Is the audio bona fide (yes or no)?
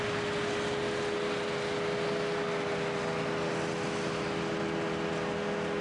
yes